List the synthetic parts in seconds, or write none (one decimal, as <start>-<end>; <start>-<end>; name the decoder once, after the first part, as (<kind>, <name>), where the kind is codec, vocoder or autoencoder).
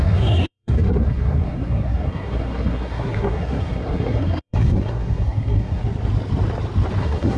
0.0-5.8 (codec, SNAC); 7.0-7.4